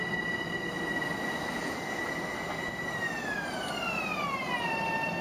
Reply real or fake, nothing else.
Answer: real